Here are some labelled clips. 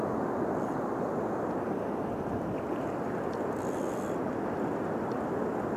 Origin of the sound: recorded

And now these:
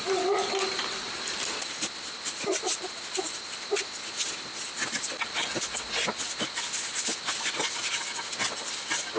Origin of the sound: recorded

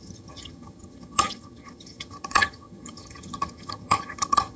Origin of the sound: remade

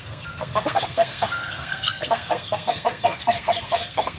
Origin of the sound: remade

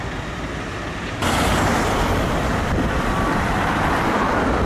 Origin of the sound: remade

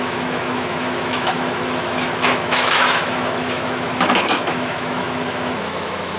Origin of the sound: remade